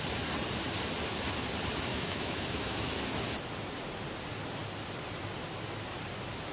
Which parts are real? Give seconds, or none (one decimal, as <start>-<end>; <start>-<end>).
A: 0.0-1.9; 2.9-6.5

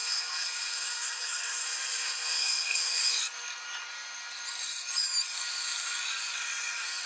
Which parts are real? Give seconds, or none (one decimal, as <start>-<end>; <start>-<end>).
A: 3.1-7.1

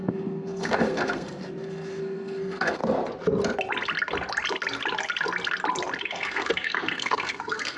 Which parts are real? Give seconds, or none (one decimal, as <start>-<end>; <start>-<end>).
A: 2.8-6.0

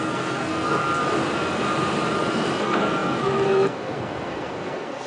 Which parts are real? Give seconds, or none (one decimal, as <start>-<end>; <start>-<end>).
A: 0.8-2.6

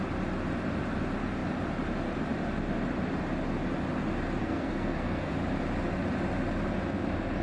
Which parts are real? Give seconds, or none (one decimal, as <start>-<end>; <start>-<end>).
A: 0.0-4.4; 5.3-7.4